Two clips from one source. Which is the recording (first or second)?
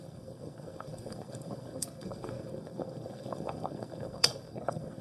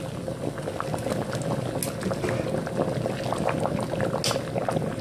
second